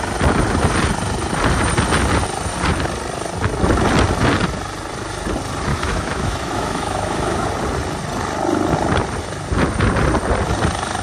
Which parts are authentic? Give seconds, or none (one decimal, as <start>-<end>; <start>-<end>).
0.0-5.7; 7.5-11.0